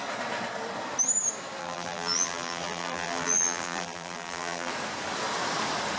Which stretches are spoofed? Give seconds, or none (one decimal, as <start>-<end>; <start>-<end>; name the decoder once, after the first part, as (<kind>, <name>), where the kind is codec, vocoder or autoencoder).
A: 1.6-4.7 (vocoder, BigVGAN v2)